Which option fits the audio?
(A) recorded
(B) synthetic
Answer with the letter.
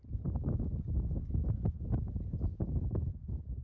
A